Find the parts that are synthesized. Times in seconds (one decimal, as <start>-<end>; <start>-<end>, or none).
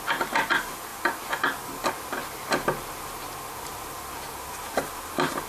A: none